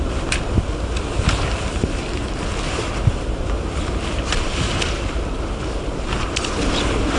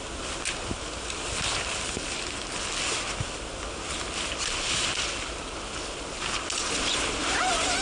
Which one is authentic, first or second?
second